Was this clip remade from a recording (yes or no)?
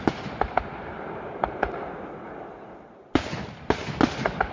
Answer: no